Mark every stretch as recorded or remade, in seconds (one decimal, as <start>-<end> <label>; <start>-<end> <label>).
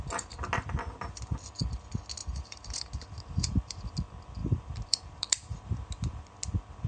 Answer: 0.0-2.2 recorded; 2.2-3.8 remade; 3.8-4.4 recorded; 4.4-6.2 remade; 6.2-6.9 recorded